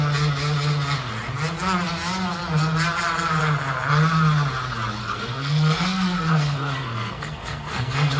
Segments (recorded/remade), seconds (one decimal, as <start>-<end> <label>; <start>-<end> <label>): 0.0-5.0 recorded; 5.0-8.2 remade

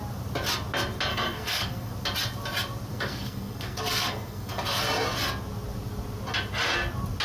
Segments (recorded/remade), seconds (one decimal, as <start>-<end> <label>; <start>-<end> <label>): 0.0-1.1 recorded; 1.1-1.9 remade; 1.9-2.9 recorded; 2.9-4.8 remade; 4.8-7.2 recorded

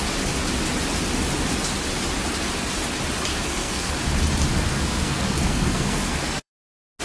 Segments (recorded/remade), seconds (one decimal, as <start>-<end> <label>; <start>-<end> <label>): 0.0-3.3 recorded; 3.3-3.9 remade; 3.9-4.5 recorded; 4.5-6.5 remade; 6.5-7.0 recorded